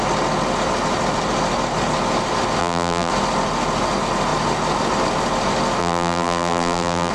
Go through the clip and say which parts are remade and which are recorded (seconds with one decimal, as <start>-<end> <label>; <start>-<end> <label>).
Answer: 0.0-2.6 recorded; 2.6-3.1 remade; 3.1-5.8 recorded; 5.8-7.1 remade